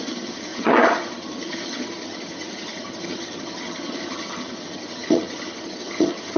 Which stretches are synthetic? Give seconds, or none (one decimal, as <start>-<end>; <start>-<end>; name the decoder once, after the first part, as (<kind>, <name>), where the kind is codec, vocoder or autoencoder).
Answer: 0.0-6.4 (vocoder, HiFi-GAN)